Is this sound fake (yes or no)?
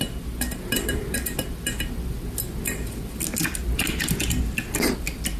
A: no